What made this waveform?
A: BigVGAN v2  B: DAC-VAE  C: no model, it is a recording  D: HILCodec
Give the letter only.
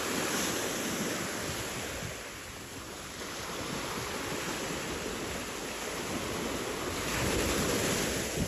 C